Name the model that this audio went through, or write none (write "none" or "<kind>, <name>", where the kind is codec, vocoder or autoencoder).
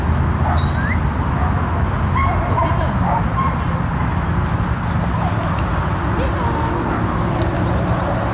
none